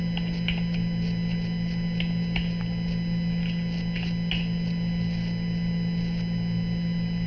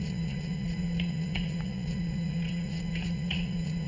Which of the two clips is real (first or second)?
first